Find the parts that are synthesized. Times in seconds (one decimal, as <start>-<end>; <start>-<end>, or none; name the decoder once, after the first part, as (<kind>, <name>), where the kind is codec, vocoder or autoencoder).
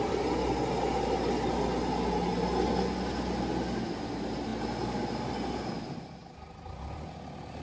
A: none